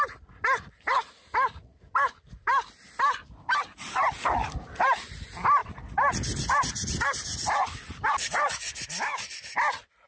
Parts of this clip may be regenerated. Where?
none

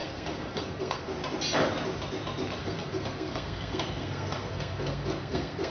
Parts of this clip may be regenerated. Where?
0.0-1.1 (codec, SNAC); 2.6-5.7

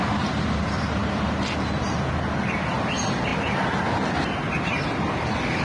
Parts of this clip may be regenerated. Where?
none

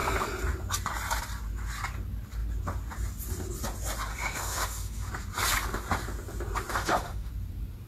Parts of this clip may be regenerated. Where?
4.1-5.1 (autoencoder, DAC-VAE); 6.7-7.3

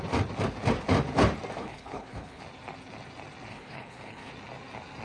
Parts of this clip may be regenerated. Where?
1.6-2.4 (codec, HILCodec); 3.5-4.3